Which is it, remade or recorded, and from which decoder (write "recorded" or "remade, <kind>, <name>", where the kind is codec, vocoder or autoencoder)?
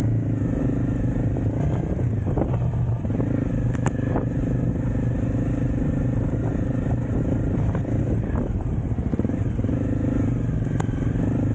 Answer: recorded